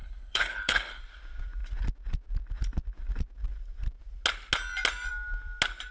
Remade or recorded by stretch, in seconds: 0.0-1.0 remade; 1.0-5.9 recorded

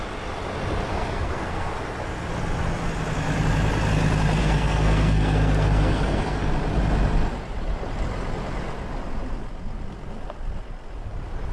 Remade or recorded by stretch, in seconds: 0.0-0.9 recorded; 0.9-1.7 remade; 1.7-4.4 recorded; 4.4-6.4 remade; 6.4-11.5 recorded

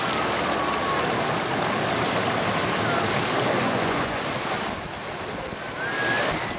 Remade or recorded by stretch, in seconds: 0.0-3.6 recorded; 3.6-4.2 remade; 4.2-6.6 recorded

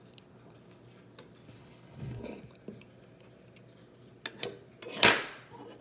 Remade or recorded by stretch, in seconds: 0.0-1.6 recorded; 1.6-2.4 remade; 2.4-5.8 recorded